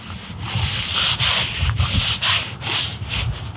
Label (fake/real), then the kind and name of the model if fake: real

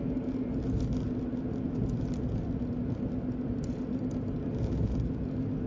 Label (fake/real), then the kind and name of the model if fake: real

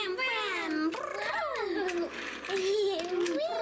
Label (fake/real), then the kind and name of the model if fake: real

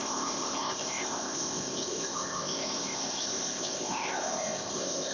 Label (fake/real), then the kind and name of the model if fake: fake, codec, ZipCodec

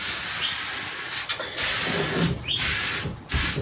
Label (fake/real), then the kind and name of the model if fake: real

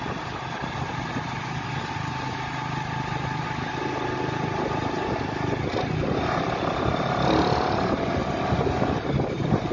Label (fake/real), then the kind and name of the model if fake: real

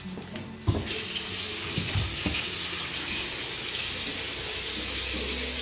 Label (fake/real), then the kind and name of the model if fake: real